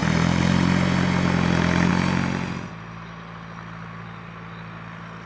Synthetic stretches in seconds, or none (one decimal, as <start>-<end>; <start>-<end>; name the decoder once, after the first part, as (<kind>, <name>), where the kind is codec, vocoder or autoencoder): none